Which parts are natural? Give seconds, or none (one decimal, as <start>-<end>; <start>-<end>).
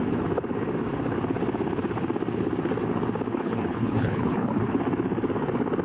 0.0-3.3; 4.7-5.8